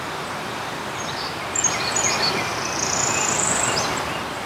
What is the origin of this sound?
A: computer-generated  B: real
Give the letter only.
B